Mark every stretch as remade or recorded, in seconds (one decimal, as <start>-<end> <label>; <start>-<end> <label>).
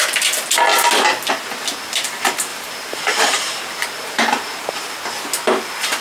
0.0-2.5 recorded; 2.5-4.9 remade; 4.9-6.0 recorded